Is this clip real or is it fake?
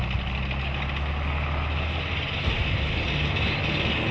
real